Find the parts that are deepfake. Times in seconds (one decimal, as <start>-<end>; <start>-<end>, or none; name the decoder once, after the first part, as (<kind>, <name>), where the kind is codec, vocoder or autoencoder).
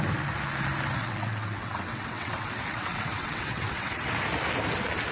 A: 1.0-4.1 (vocoder, WaveNeXt)